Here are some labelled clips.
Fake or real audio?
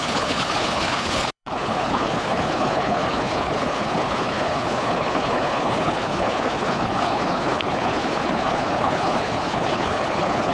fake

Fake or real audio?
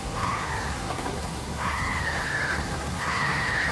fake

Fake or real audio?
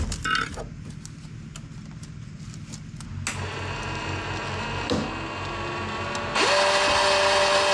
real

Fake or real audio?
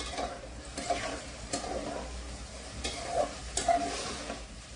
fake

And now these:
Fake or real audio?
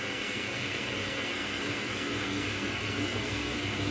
fake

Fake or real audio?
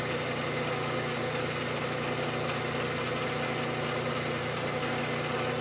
real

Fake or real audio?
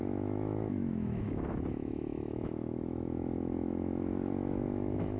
fake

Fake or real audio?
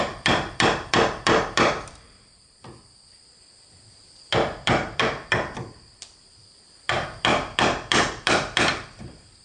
fake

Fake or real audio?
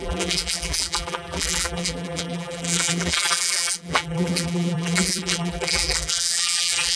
fake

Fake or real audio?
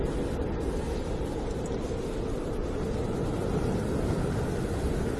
real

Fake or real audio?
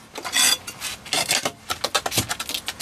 real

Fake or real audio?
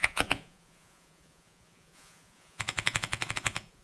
fake